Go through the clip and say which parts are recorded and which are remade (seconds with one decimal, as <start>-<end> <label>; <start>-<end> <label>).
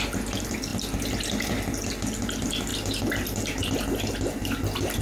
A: 0.0-5.0 recorded